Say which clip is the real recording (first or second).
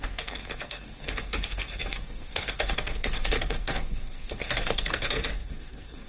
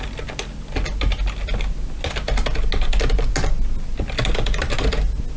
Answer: second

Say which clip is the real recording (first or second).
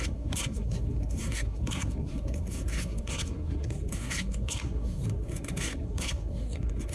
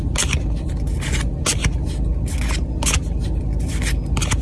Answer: second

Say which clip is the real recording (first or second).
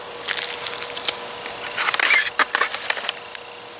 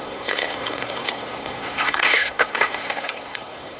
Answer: first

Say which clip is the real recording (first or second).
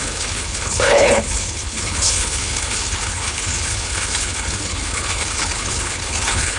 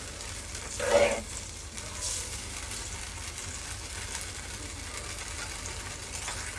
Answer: second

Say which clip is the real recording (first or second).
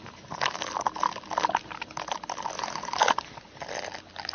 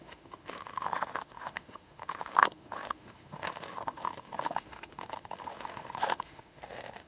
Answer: first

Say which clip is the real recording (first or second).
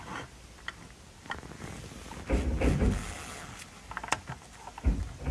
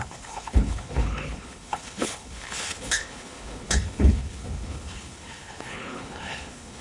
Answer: first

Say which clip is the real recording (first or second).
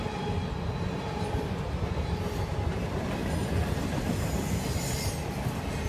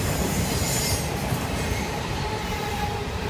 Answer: first